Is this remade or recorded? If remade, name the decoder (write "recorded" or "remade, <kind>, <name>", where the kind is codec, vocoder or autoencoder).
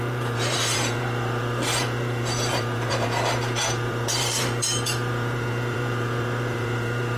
remade, vocoder, BigVGAN v2